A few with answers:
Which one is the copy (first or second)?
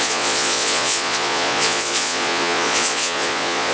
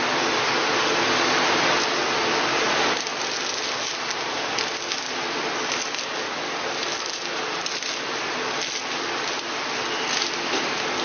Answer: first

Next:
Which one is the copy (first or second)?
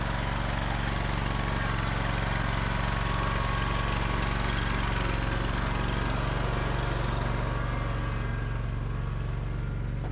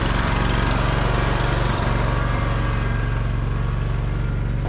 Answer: second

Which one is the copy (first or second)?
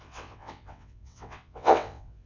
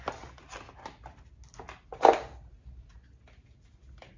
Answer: first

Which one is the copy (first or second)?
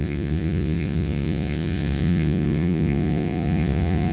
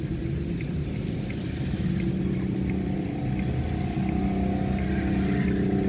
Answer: first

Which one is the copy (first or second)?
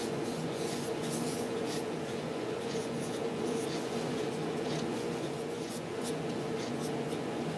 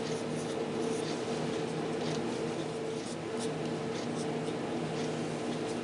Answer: first